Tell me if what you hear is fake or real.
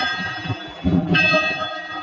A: fake